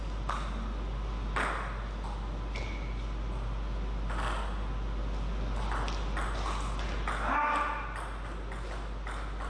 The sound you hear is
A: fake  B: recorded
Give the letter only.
B